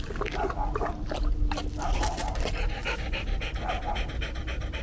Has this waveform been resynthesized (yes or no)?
no